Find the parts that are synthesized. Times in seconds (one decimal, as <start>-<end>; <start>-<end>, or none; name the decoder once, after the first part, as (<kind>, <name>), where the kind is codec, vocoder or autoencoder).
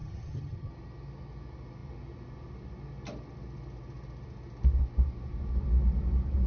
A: 0.0-0.7 (vocoder, HiFi-GAN)